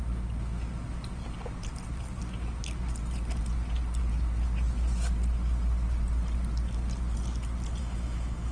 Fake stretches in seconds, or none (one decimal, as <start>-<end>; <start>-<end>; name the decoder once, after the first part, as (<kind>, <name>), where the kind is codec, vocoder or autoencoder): 7.8-8.5 (autoencoder, DAC-VAE)